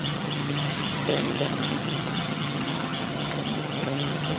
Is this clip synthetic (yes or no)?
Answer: yes